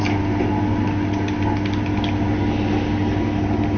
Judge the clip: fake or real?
real